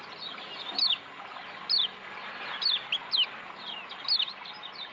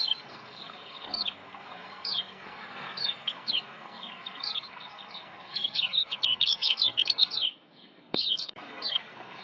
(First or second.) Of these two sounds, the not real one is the second